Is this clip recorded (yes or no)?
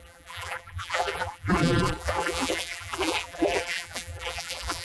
no